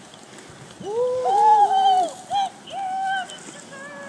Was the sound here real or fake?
real